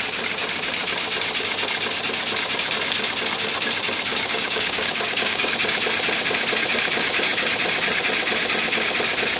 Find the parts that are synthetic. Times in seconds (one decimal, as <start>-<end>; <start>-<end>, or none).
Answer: 4.1-5.5

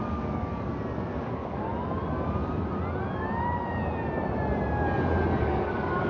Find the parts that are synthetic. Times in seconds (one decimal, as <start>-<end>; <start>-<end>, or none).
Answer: 0.0-0.7; 1.2-1.7; 5.4-6.1

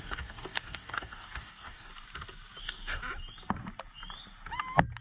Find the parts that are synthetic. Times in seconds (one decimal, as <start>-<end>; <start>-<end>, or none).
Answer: 0.0-1.9; 2.6-3.0

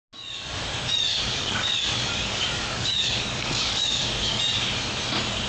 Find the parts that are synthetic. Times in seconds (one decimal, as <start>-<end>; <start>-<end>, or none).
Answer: 1.1-4.4